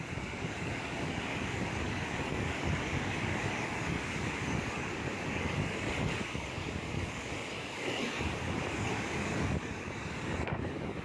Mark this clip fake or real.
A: fake